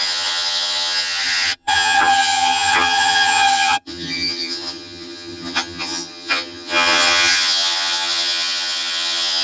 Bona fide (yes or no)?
no